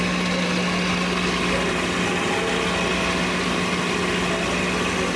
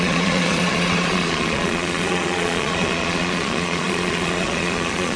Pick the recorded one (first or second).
first